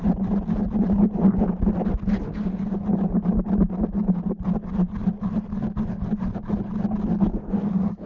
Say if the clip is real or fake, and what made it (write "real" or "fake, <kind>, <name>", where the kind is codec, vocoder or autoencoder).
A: real